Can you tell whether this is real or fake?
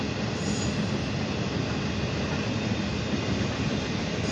real